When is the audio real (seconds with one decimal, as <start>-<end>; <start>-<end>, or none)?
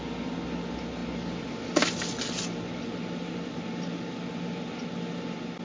0.0-5.6